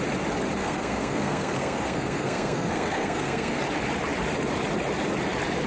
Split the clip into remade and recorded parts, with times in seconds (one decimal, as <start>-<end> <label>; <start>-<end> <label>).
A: 0.0-0.6 recorded; 0.6-3.6 remade; 3.6-5.7 recorded